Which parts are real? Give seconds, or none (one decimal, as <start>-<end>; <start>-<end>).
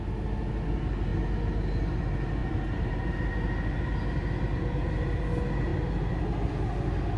0.0-2.4; 3.3-7.2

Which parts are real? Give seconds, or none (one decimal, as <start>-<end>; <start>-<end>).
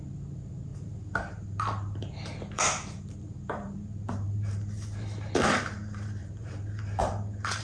none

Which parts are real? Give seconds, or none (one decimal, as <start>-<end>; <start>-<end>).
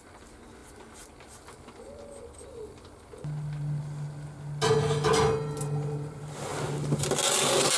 0.0-7.8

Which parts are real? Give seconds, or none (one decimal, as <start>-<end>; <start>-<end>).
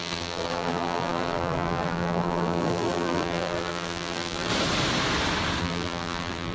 4.5-5.6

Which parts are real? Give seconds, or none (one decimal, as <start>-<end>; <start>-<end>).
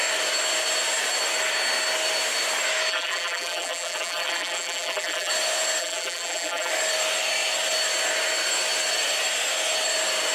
0.0-2.9; 5.3-5.8; 6.7-10.3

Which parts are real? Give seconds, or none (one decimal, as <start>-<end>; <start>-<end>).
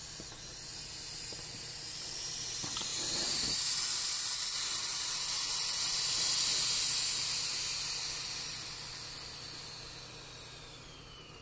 0.0-1.3; 2.2-2.9; 4.0-4.9; 6.5-11.4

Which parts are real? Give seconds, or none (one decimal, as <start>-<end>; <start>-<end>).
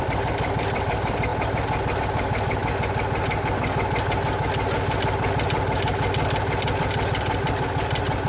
1.3-2.0; 2.6-6.8